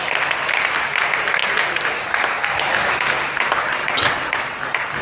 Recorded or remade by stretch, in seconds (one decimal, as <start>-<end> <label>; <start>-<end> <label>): 0.0-3.8 recorded; 3.8-4.6 remade; 4.6-5.0 recorded